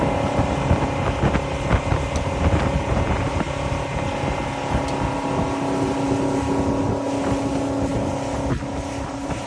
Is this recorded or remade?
recorded